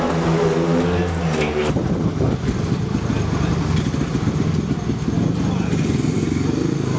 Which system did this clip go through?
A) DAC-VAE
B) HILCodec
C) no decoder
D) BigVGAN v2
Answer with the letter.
C